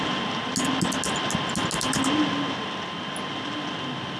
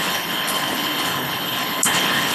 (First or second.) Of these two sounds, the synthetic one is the second